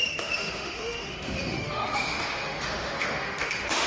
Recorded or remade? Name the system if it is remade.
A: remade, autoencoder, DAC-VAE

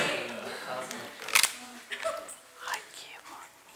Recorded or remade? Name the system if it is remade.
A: recorded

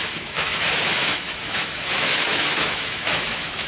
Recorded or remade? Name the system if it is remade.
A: remade, autoencoder, DAC-VAE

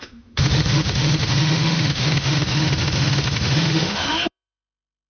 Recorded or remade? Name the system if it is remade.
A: remade, autoencoder, DAC-VAE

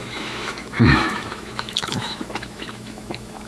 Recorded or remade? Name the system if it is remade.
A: remade, autoencoder, DAC-VAE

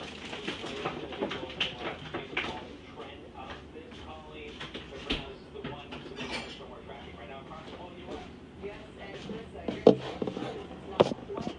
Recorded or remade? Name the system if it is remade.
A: recorded